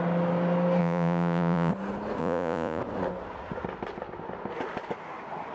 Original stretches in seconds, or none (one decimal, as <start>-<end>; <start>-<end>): 0.0-0.8; 1.7-2.2; 2.8-5.5